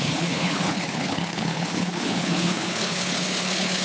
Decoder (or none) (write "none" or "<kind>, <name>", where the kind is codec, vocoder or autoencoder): codec, HILCodec